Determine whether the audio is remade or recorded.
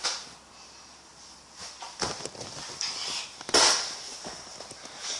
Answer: recorded